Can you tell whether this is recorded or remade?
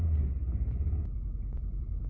recorded